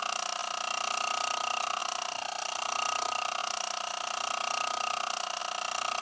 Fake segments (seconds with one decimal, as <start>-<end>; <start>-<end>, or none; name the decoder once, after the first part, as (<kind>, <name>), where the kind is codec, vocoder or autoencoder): none